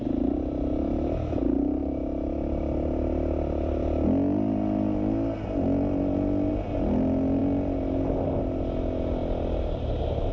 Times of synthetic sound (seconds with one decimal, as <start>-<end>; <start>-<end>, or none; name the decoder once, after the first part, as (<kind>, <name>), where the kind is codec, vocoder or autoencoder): none